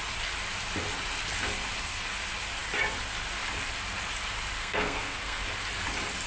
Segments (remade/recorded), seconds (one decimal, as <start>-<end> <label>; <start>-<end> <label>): 0.0-4.6 recorded; 4.6-5.4 remade; 5.4-6.3 recorded